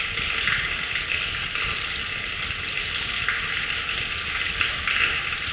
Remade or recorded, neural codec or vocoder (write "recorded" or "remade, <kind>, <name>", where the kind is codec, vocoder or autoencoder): recorded